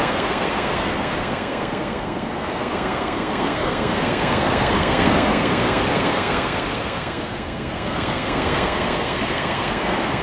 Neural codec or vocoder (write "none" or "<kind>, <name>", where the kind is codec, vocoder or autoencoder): codec, SNAC